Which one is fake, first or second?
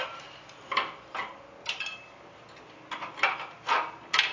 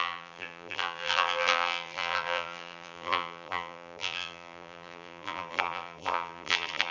second